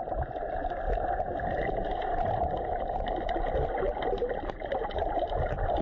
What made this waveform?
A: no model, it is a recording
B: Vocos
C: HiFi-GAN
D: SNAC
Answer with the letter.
A